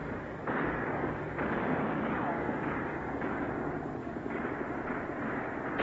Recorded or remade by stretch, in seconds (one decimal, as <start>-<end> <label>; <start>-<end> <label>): 0.0-3.5 remade; 3.5-4.0 recorded; 4.0-4.5 remade; 4.5-5.8 recorded